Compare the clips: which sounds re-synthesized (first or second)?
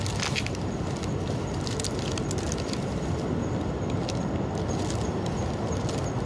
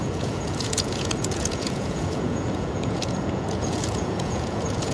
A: second